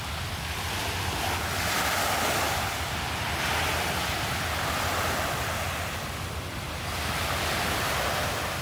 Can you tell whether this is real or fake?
real